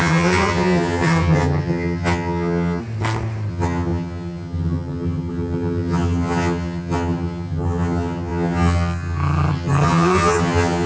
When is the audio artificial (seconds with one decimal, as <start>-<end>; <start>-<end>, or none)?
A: 0.0-2.8; 3.5-10.9